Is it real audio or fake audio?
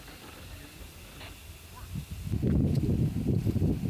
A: real